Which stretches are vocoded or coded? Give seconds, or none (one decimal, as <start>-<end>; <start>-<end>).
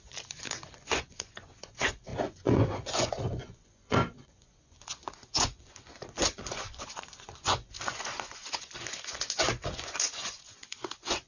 0.0-11.3